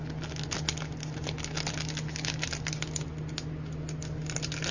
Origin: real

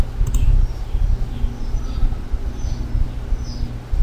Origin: real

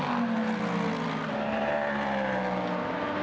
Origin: real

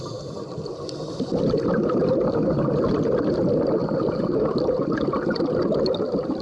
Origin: real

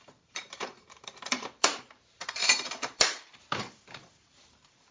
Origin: fake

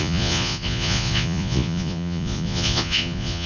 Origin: fake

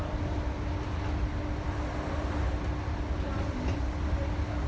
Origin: real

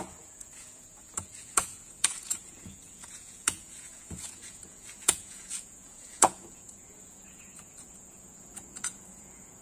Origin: fake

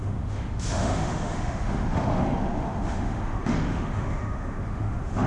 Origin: fake